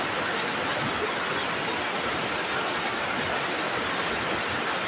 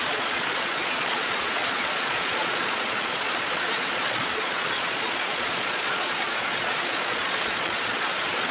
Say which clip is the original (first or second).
first